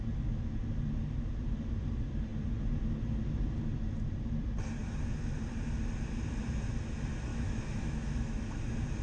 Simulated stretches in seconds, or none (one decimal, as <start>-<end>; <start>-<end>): 7.3-8.6